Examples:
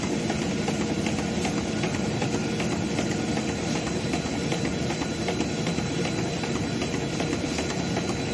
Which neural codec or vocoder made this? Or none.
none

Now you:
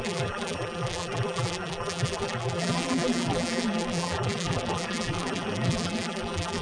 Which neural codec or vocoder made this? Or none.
vocoder, BigVGAN v2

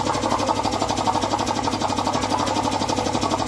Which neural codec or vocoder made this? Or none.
none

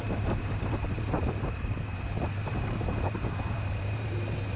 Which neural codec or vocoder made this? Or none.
vocoder, BigVGAN v2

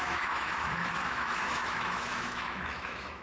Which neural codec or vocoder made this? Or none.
autoencoder, DAC-VAE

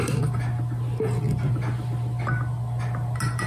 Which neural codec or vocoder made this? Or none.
none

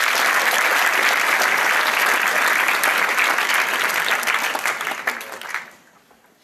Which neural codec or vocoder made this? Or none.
none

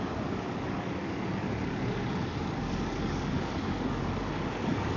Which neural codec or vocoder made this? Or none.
codec, DAC